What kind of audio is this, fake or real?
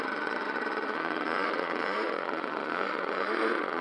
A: fake